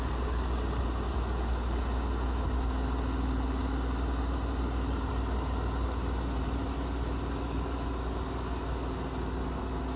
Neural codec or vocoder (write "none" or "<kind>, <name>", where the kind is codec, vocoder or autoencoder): none